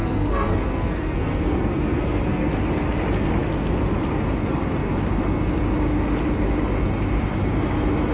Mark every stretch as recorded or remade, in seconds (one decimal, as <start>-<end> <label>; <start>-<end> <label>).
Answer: 0.0-2.5 remade; 2.5-8.1 recorded